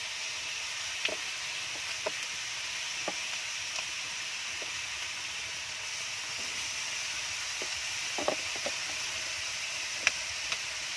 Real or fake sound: real